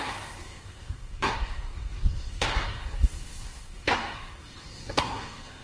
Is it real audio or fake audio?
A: fake